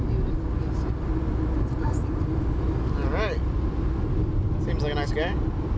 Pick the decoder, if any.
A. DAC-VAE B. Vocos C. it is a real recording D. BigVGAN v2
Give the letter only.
C